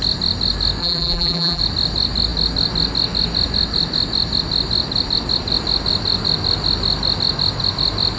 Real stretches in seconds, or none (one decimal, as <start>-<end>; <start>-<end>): 0.0-0.8; 1.6-8.2